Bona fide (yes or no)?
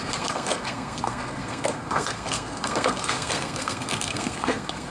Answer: no